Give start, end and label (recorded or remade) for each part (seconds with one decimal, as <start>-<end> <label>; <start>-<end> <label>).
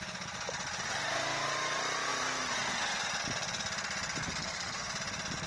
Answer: 0.0-4.2 recorded; 4.2-4.9 remade; 4.9-5.5 recorded